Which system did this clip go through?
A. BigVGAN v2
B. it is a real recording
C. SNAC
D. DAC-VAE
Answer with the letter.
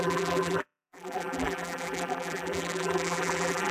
A